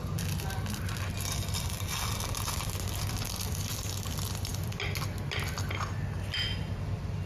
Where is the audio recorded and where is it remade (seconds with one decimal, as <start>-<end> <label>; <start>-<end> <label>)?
0.0-7.3 recorded